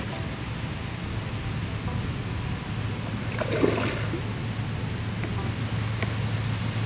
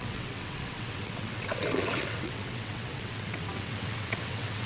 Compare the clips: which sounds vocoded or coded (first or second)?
second